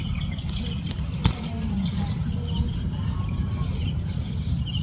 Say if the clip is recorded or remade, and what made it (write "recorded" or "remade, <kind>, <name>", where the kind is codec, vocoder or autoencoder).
recorded